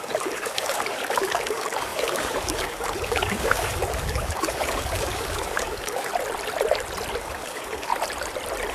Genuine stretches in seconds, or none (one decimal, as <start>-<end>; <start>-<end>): 6.1-7.2; 7.9-8.7